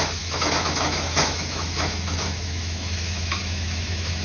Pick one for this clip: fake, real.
fake